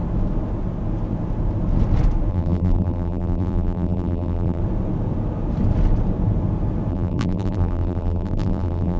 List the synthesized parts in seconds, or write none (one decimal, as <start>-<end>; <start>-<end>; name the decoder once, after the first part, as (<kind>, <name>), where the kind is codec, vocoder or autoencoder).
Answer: 2.3-4.6 (vocoder, BigVGAN v2); 6.9-9.0